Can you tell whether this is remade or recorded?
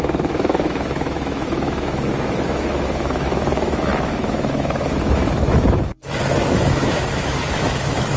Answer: remade